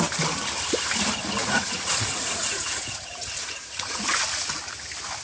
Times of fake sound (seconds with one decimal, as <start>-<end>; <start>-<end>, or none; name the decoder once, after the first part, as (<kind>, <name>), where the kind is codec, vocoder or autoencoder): 1.4-4.0 (vocoder, Vocos)